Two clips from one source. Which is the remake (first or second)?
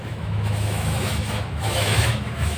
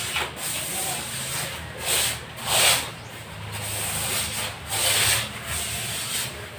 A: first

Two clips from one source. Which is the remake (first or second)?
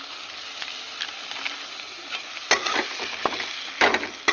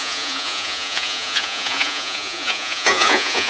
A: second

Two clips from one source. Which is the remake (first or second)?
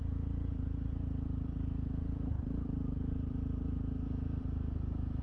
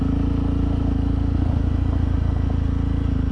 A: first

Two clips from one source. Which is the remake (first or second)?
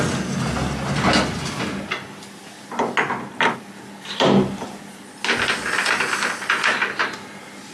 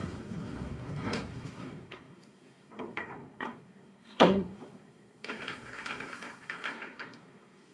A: second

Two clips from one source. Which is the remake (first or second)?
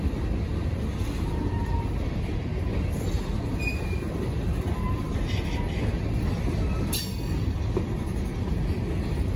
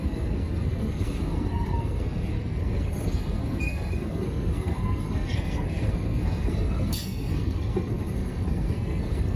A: second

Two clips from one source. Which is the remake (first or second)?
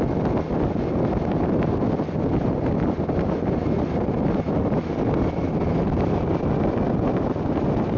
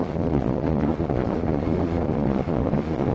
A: second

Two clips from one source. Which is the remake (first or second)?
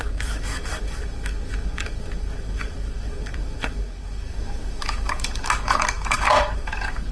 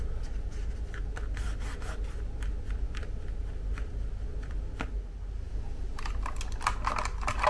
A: first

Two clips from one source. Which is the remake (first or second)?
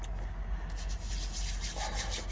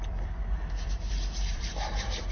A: second